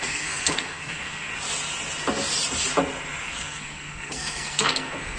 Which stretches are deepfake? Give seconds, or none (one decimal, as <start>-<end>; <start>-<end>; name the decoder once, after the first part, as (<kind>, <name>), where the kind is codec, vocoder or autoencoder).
0.0-1.3 (codec, SNAC); 3.2-5.2